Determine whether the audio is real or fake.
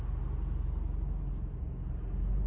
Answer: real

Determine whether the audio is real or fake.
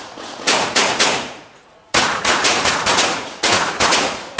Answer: fake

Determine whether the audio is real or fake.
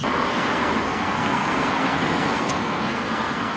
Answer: fake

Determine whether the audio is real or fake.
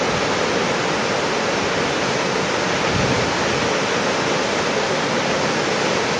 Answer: real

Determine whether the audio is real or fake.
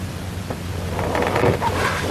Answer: real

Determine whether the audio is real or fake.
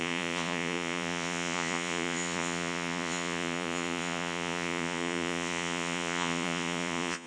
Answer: fake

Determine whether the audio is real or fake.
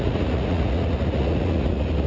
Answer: fake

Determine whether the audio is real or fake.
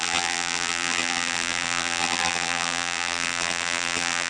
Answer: fake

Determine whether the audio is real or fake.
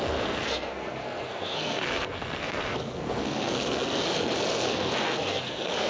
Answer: fake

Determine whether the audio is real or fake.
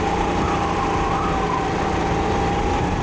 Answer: real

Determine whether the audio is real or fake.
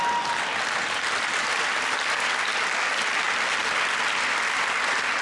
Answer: real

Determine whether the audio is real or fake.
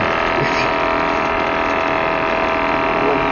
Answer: real